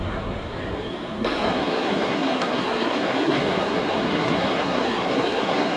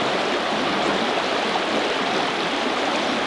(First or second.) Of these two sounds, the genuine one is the second